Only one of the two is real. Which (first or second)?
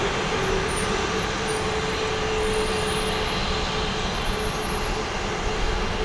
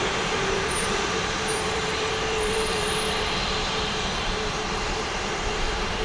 first